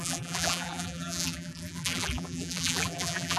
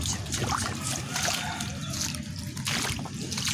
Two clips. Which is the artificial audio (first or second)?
first